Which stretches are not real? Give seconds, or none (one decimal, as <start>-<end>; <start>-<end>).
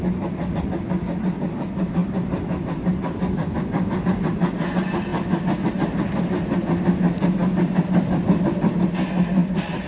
2.0-4.0; 7.4-8.4; 9.4-9.9